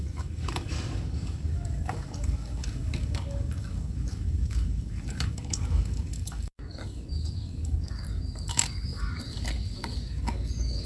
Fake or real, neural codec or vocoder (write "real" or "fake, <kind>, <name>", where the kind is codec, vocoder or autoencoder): fake, codec, DAC